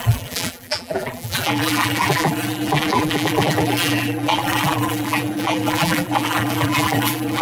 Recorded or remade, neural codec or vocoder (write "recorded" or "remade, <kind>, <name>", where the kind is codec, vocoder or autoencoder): remade, vocoder, BigVGAN v2